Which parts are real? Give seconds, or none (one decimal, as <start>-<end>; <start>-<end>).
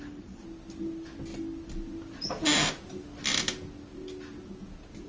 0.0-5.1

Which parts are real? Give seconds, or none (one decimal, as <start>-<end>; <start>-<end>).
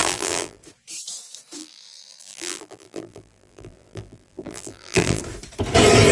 0.6-1.6; 5.2-6.1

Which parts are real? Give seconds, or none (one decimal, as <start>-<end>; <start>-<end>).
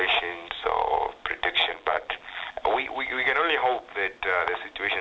0.0-1.6; 2.6-5.0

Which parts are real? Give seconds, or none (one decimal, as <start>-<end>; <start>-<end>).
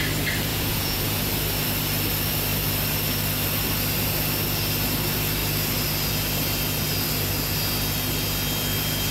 0.0-0.5; 1.2-9.1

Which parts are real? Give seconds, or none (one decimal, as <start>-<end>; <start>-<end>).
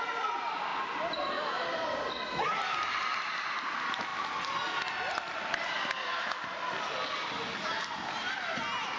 0.0-9.0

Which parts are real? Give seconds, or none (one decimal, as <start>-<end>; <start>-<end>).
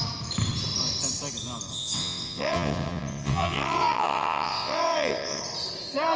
0.0-1.7; 5.4-6.2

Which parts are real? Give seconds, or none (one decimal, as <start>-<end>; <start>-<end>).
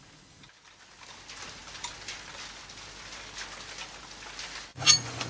0.0-4.7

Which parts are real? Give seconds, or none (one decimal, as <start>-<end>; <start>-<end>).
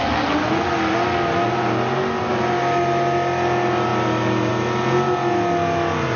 0.0-6.2